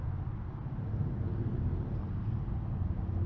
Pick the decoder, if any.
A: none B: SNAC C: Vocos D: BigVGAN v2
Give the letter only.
A